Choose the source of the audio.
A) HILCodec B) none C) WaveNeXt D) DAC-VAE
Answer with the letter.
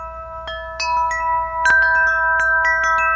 B